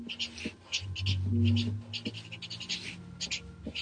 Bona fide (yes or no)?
yes